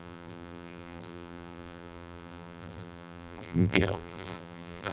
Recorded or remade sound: remade